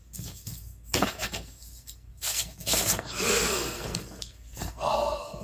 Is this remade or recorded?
remade